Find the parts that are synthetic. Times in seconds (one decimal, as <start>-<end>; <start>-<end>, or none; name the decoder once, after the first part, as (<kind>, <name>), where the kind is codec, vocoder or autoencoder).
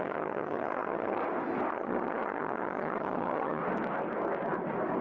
0.0-1.2 (vocoder, HiFi-GAN); 1.7-3.6